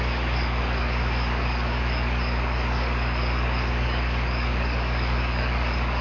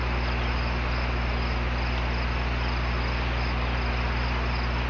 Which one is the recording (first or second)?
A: second